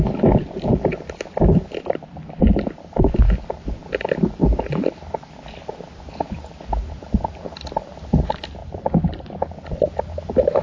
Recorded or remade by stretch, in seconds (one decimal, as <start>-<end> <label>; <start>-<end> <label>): 0.0-10.6 recorded